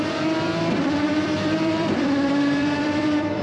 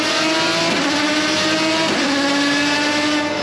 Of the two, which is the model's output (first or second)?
first